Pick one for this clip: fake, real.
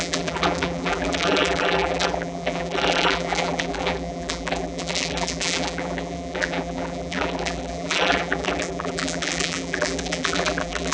fake